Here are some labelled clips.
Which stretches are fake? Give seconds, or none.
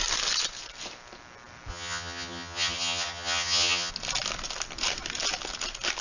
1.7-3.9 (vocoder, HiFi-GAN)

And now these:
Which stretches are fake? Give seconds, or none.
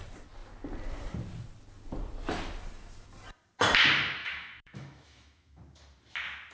4.2-5.6 (autoencoder, DAC-VAE)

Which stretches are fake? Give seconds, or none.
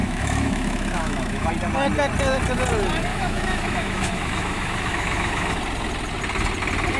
0.0-1.5 (autoencoder, DAC-VAE); 3.1-5.6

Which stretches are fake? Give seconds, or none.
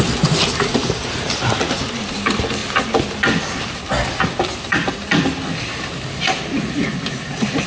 none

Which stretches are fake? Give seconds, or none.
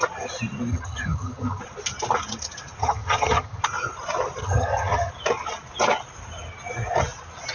0.7-1.6 (vocoder, HiFi-GAN); 2.8-3.6; 4.4-5.1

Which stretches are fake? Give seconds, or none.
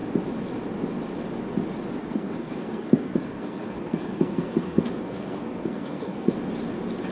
2.0-6.3 (codec, SNAC)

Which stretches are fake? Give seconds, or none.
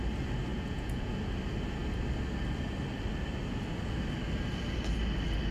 0.5-1.1 (vocoder, Vocos)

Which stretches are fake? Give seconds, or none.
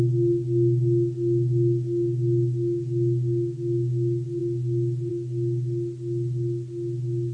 none